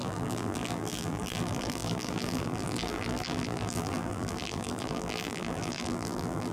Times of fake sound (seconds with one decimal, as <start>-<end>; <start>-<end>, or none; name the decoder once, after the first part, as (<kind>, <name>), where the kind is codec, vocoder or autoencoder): 0.0-6.5 (vocoder, BigVGAN v2)